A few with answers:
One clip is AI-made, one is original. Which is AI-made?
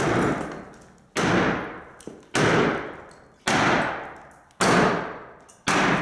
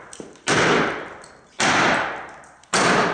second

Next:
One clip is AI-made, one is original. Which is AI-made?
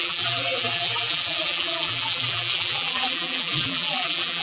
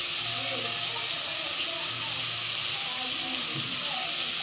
first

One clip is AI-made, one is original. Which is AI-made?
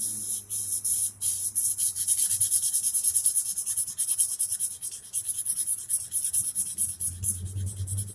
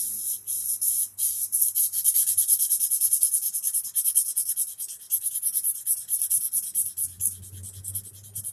first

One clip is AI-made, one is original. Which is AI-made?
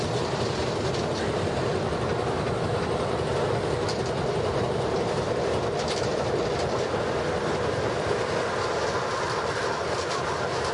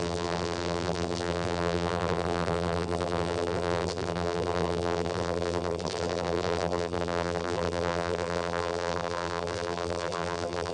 second